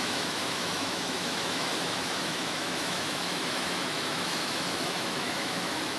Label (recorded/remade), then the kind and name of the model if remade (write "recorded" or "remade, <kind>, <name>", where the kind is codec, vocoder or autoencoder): remade, autoencoder, DAC-VAE